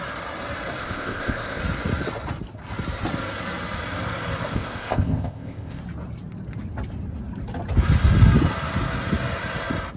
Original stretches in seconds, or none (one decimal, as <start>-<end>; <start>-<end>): 0.0-0.8; 1.6-4.5; 5.8-10.0